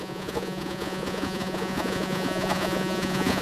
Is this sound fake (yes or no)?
yes